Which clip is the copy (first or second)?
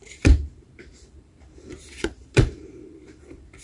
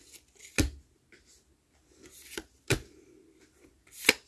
first